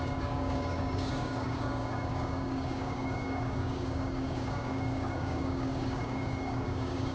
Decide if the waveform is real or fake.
fake